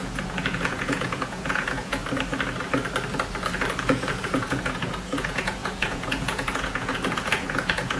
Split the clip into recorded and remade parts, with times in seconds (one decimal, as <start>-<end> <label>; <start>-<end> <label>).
0.0-2.0 remade; 2.0-3.8 recorded; 3.8-8.0 remade